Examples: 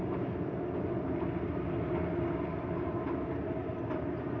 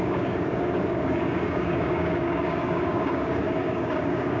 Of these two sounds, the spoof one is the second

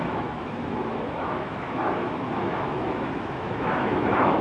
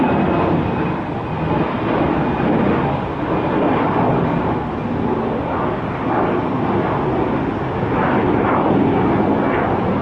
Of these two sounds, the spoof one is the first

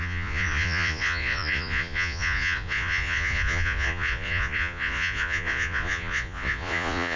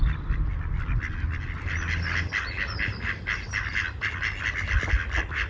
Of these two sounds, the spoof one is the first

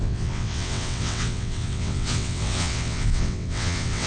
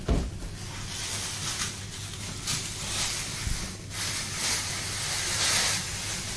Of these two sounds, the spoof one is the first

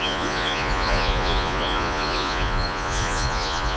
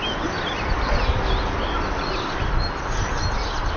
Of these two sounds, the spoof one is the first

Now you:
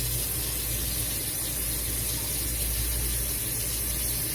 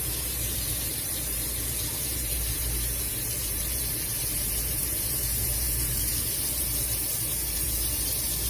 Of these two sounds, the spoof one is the second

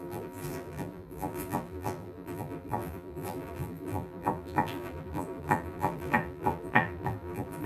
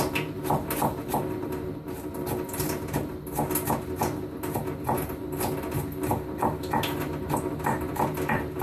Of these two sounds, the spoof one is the first